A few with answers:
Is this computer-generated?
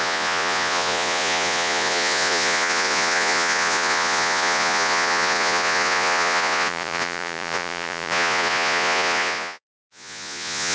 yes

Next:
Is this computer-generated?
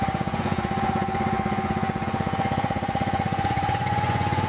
yes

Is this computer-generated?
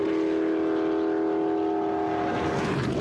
no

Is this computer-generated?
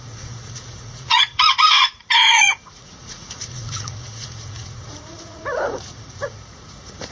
yes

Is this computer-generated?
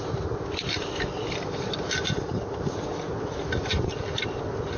no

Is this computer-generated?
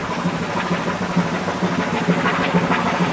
no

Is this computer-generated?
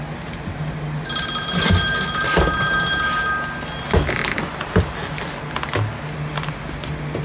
no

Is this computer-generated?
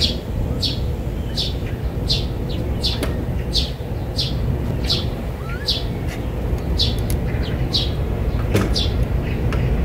no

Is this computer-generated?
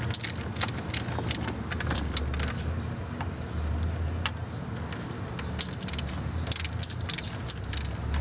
no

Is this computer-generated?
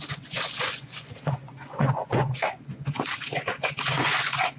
yes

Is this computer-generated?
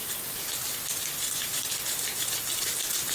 no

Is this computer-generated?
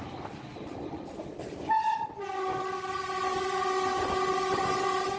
no